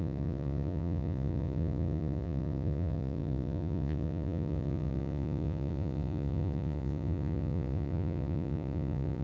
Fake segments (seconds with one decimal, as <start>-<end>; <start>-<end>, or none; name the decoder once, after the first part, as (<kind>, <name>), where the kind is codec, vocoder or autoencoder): 0.0-9.2 (vocoder, Vocos)